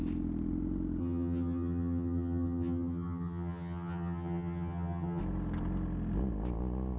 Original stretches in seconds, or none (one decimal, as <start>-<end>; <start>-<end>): 0.0-1.0; 5.2-7.0